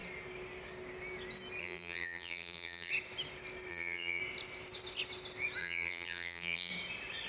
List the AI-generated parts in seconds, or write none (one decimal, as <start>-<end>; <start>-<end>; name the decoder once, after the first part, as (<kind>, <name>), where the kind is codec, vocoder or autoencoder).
1.6-2.9 (vocoder, BigVGAN v2); 3.7-4.2; 5.6-6.7